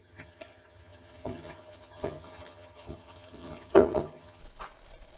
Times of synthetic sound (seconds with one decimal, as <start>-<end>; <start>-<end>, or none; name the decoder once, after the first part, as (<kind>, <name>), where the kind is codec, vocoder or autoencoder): 0.0-4.4 (vocoder, HiFi-GAN)